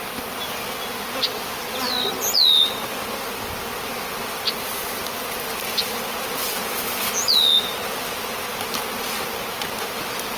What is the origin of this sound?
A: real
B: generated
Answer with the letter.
A